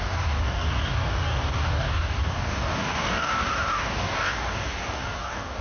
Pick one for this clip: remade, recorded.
remade